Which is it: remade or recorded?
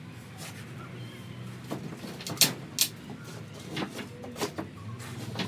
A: recorded